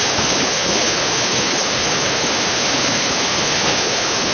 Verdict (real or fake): fake